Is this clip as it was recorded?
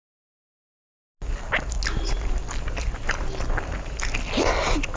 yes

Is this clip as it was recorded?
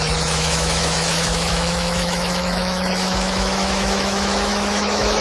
no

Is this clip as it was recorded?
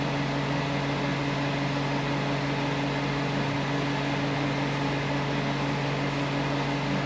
yes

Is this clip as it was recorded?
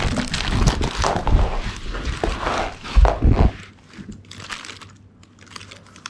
yes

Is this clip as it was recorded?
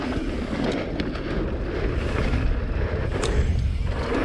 yes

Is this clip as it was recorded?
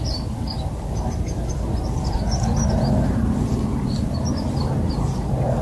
yes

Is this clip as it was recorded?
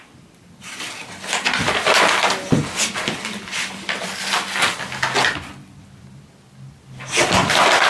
yes